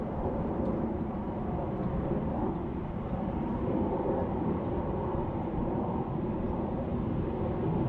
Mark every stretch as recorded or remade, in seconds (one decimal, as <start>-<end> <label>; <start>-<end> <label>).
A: 0.0-6.9 remade; 6.9-7.9 recorded